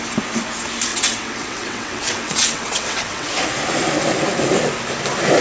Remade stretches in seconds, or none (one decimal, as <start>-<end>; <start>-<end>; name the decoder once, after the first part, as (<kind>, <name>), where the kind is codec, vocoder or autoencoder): 0.9-3.3 (vocoder, WaveNeXt)